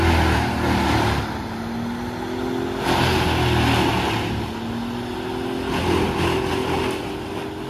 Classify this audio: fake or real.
real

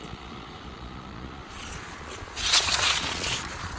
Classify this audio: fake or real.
fake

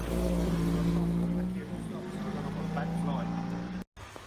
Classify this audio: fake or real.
real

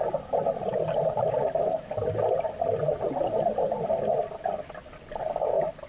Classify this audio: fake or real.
real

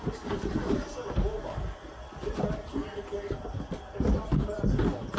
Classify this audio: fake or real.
real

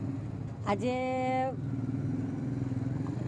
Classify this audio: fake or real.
real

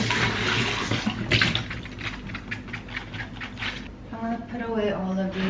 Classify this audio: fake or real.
real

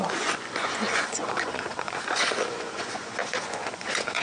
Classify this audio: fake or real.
fake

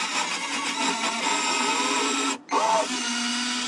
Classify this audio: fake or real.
real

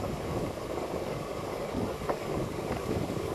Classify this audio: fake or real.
fake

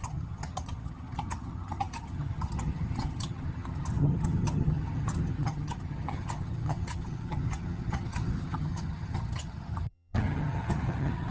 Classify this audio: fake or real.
fake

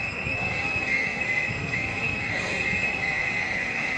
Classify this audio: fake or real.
fake